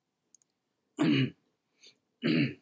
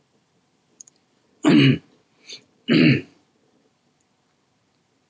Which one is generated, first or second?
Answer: second